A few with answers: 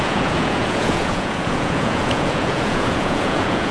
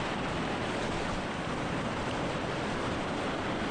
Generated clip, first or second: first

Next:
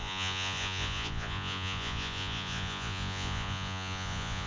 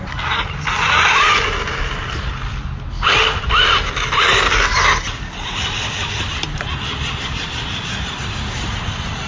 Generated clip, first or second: first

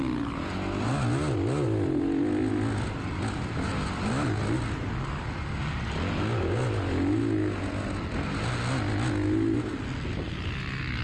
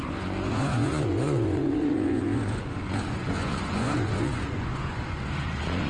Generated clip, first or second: second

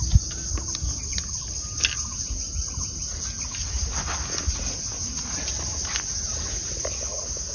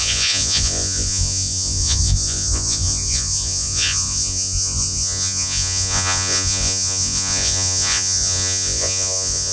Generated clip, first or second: second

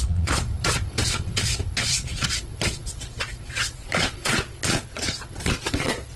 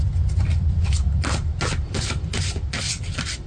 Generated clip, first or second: first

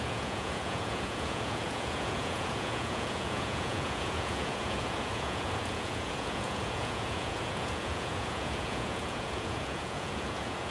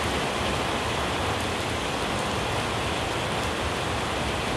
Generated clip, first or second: first